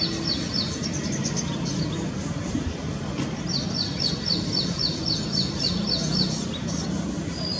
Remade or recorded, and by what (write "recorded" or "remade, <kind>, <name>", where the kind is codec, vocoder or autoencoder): recorded